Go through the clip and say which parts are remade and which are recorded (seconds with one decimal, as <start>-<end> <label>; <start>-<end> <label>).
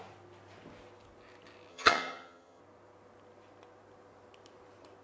0.0-1.7 recorded; 1.7-2.6 remade; 2.6-5.0 recorded